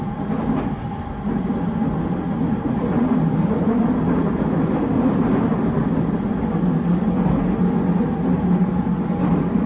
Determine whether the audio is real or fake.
real